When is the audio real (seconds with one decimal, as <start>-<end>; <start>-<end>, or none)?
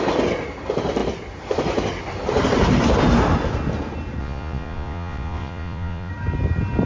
0.0-4.2; 6.1-6.9